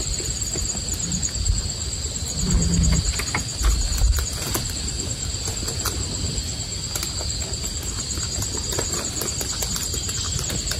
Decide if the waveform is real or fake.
real